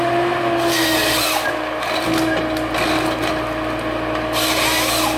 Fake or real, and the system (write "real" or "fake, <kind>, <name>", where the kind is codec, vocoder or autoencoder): real